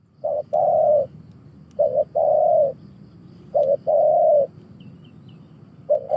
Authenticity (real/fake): real